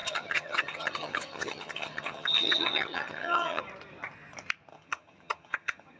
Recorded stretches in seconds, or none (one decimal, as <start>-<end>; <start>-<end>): 3.6-4.7